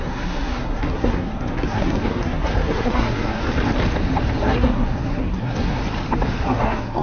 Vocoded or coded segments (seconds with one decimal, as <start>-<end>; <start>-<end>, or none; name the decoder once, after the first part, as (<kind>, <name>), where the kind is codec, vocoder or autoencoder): 0.0-3.4 (codec, SNAC); 4.4-5.8; 6.4-7.0